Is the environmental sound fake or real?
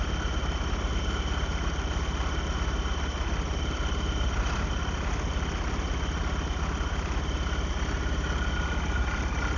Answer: real